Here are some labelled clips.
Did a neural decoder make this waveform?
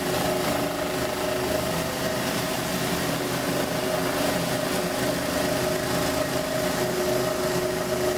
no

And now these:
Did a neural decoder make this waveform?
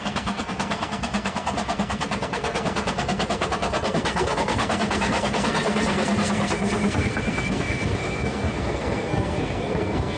yes